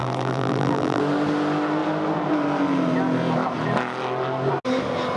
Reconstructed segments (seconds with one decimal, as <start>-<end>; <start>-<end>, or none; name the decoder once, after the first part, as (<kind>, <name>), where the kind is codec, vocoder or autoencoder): 0.0-1.0 (vocoder, BigVGAN v2)